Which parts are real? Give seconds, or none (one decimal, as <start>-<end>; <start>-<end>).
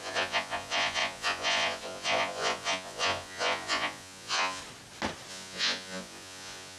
4.6-5.3